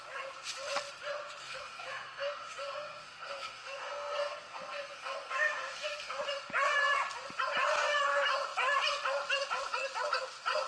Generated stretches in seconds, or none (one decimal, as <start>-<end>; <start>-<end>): 1.4-6.2